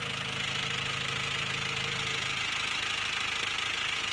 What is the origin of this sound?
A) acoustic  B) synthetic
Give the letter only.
A